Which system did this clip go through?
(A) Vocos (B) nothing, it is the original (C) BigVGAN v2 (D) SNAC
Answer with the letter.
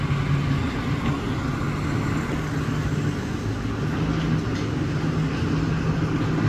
B